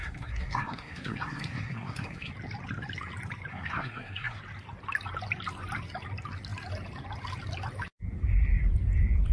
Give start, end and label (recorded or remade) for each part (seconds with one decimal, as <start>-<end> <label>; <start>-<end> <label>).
0.0-2.3 remade; 2.3-3.5 recorded; 3.5-4.4 remade; 4.4-9.3 recorded